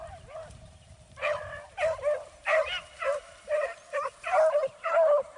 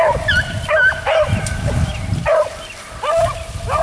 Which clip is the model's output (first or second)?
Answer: first